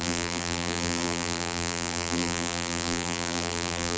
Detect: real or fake fake